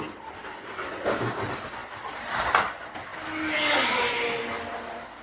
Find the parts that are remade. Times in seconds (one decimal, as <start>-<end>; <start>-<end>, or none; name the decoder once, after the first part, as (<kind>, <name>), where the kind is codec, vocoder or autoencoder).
none